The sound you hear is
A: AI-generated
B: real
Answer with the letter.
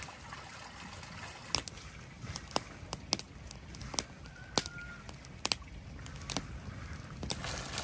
B